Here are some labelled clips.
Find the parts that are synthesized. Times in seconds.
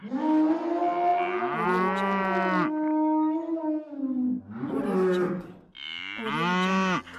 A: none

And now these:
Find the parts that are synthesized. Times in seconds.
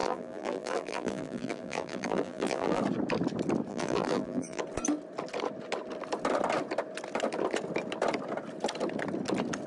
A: 0.0-2.8 (vocoder, BigVGAN v2); 3.7-4.6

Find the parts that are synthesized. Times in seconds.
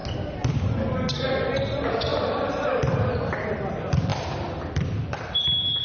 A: 2.1-3.3 (vocoder, BigVGAN v2); 4.1-5.8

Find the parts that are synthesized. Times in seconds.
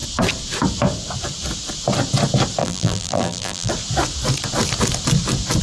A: 2.6-3.7 (vocoder, BigVGAN v2)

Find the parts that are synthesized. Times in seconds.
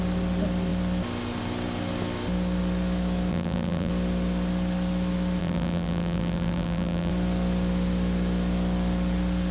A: 3.3-3.9 (vocoder, BigVGAN v2); 5.4-7.1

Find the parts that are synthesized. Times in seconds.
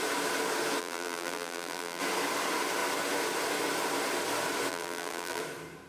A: 0.8-2.0 (vocoder, BigVGAN v2); 4.7-5.4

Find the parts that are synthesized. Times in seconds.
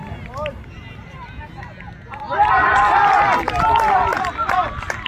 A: none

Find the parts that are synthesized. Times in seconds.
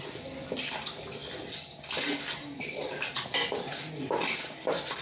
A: none